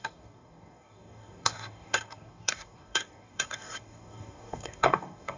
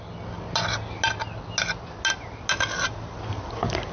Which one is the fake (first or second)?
first